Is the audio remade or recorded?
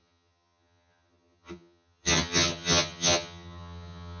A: remade